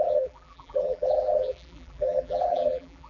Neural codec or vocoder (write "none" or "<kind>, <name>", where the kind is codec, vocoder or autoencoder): vocoder, BigVGAN v2